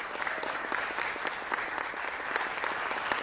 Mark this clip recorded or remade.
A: recorded